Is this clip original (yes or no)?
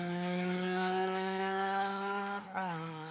no